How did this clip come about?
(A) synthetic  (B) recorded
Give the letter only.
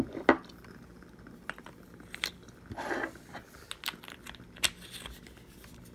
B